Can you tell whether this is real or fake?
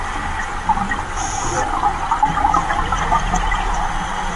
real